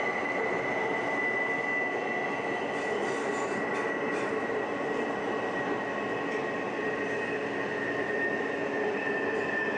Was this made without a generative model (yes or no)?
yes